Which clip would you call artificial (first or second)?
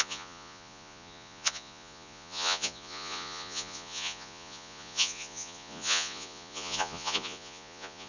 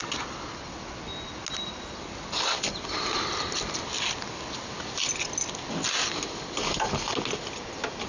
first